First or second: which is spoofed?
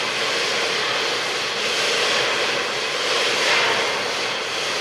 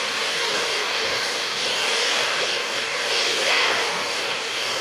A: second